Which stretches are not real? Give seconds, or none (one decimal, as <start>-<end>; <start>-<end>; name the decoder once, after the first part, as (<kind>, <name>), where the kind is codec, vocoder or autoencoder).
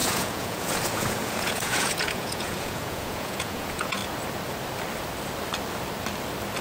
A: 0.0-4.0 (vocoder, Vocos)